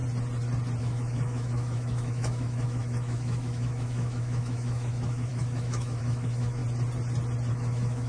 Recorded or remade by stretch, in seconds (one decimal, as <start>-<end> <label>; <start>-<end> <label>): 0.0-0.8 recorded; 0.8-6.6 remade; 6.6-7.5 recorded; 7.5-8.1 remade

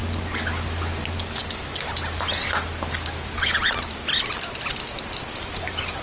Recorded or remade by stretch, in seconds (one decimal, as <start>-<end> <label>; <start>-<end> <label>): 0.0-6.0 recorded

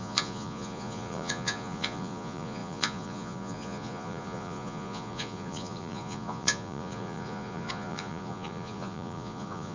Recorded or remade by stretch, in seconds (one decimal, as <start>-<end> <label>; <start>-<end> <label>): 0.0-9.7 remade

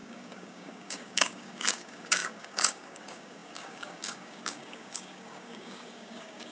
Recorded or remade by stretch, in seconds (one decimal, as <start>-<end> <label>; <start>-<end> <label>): 0.0-6.5 remade

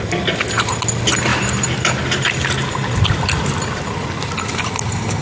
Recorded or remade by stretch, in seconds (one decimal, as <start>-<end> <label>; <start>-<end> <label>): 0.0-5.2 recorded